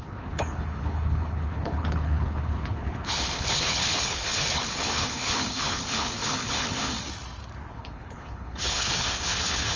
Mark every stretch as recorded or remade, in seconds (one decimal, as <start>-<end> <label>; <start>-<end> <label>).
0.0-6.9 remade; 6.9-7.7 recorded; 7.7-9.8 remade